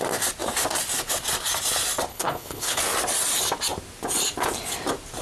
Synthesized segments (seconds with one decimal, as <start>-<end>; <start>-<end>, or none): 2.1-2.8